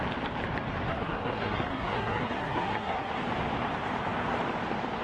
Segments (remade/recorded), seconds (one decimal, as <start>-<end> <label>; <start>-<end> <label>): 0.0-0.9 recorded; 0.9-3.1 remade; 3.1-5.0 recorded